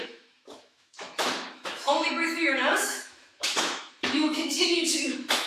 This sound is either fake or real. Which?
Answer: fake